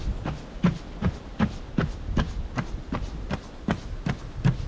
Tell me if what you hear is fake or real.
real